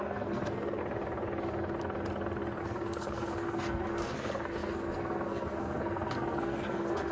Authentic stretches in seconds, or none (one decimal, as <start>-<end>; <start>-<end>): 0.8-2.6